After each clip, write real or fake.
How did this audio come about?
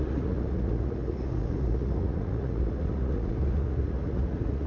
fake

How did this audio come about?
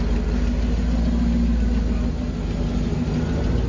real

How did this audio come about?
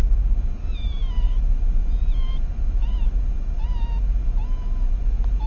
real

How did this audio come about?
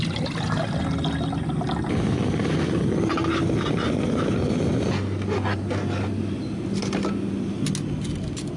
real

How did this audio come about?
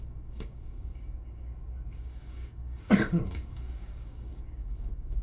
fake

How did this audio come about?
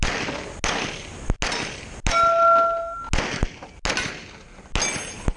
real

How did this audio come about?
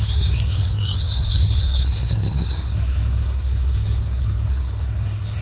fake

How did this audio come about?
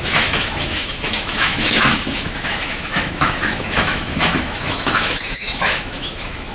fake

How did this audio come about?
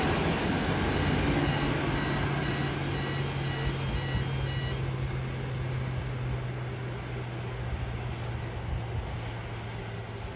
real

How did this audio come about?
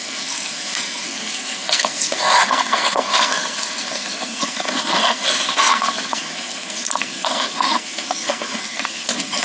fake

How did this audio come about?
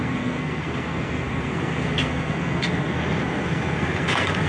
fake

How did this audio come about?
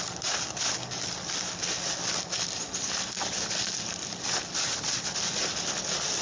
real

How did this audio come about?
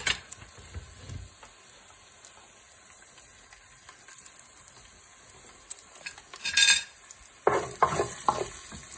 real